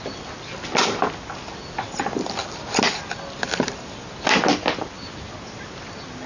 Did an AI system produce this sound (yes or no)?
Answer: no